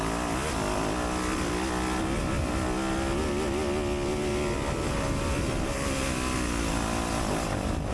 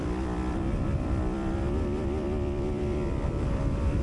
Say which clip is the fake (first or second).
second